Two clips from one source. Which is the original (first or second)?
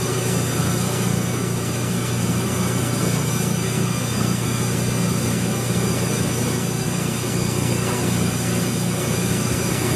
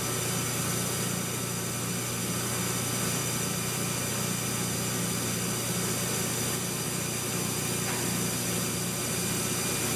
second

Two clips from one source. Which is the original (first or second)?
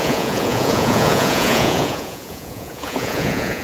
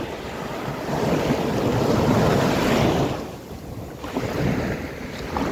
second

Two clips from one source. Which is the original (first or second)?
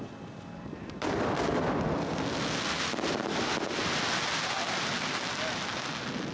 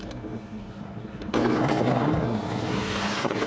first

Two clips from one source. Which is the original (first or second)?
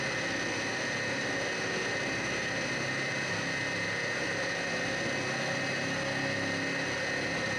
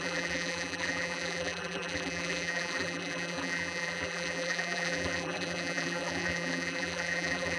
first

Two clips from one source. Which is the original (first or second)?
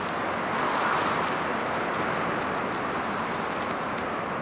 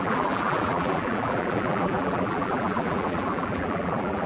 first